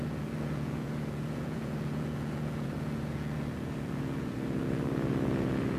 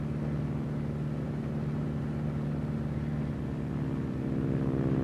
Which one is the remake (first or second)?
first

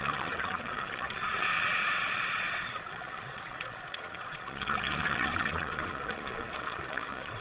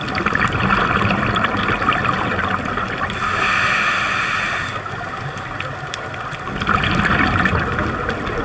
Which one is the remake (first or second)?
first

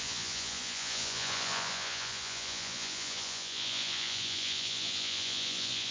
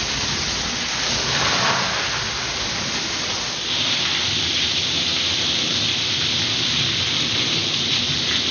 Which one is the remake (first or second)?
first